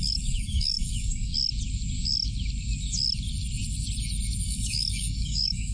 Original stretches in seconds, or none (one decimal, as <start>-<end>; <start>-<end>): 1.3-4.4